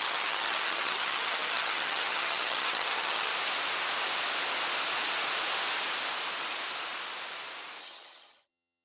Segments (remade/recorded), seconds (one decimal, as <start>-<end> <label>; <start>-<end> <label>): 0.0-3.3 remade; 3.3-7.8 recorded; 7.8-8.8 remade